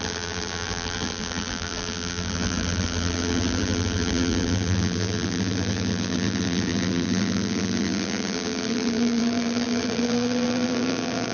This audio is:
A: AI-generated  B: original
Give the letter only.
A